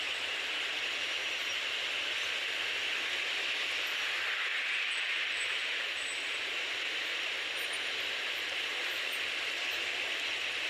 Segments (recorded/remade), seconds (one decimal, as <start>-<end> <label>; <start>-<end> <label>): 0.0-4.5 recorded; 4.5-9.1 remade; 9.1-10.7 recorded